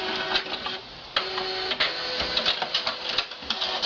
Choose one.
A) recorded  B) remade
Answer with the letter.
A